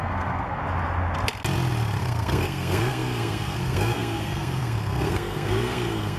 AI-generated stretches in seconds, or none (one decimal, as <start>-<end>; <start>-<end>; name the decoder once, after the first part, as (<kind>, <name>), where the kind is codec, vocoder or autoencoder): 0.0-0.6 (codec, SNAC); 2.0-6.2